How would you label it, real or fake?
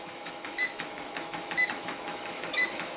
fake